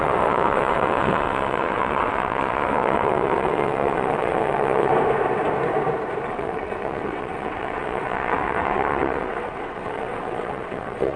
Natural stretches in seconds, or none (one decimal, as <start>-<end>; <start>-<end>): 4.9-6.3